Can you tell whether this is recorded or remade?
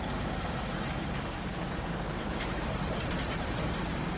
remade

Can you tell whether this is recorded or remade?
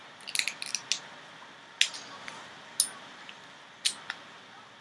recorded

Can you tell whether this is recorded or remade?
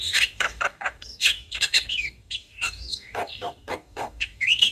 remade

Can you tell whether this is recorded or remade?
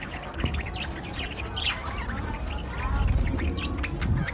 recorded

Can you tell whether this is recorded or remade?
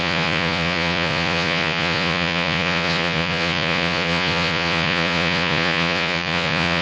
remade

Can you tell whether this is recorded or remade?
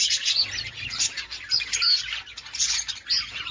recorded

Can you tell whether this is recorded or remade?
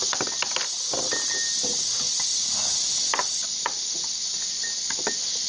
recorded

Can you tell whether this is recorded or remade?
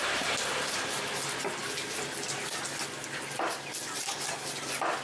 recorded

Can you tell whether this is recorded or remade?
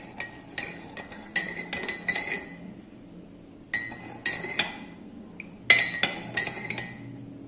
recorded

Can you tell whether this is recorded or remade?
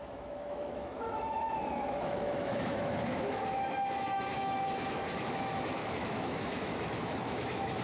remade